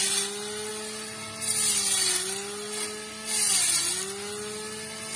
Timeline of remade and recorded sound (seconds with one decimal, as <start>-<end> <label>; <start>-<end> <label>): 0.0-5.2 recorded